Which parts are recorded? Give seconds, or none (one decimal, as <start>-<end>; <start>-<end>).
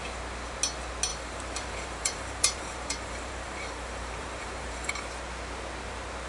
0.0-1.1; 4.9-6.3